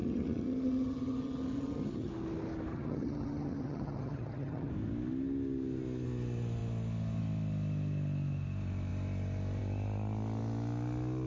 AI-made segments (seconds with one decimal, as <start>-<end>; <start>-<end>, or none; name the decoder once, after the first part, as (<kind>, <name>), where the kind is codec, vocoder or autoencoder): 0.0-2.1 (vocoder, HiFi-GAN); 2.7-4.7